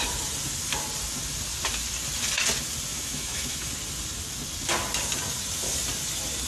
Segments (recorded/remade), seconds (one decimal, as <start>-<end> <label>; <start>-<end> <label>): 0.0-2.9 recorded; 2.9-3.7 remade; 3.7-6.5 recorded

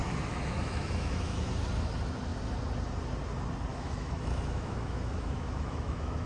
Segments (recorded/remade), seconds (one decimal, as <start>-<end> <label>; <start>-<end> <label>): 0.0-1.5 remade; 1.5-3.7 recorded; 3.7-6.3 remade

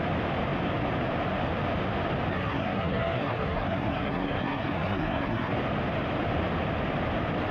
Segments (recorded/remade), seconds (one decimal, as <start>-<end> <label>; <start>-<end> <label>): 0.0-2.3 recorded; 2.3-5.5 remade; 5.5-7.5 recorded

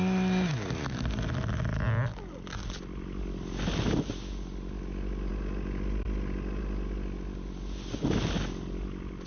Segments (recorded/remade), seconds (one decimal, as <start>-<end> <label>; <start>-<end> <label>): 0.0-9.3 recorded